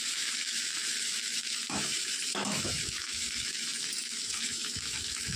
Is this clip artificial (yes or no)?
yes